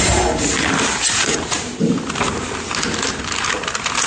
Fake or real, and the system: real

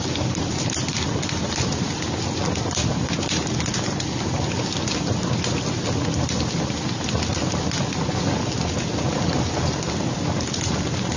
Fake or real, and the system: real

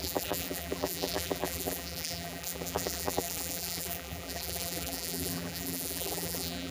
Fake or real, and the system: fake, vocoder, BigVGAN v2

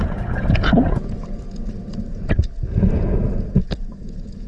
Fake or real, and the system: fake, vocoder, Vocos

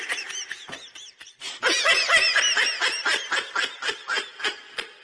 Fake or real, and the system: real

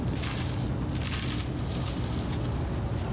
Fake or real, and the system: real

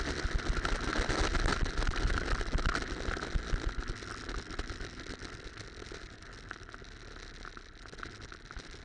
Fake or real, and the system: real